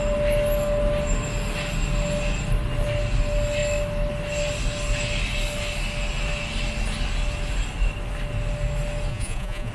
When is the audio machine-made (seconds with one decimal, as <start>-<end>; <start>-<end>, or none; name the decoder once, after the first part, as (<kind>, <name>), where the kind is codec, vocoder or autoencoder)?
9.1-9.7 (vocoder, Vocos)